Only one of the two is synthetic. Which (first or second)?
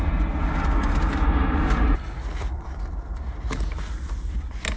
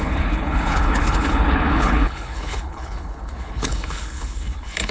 second